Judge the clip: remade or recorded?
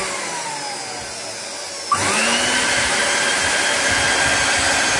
recorded